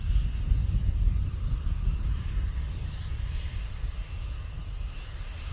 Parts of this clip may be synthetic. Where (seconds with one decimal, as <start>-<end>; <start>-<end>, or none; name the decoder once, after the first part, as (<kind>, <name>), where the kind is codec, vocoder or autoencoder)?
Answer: 0.6-3.9 (vocoder, BigVGAN v2)